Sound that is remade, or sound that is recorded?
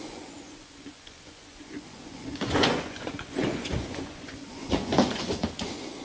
remade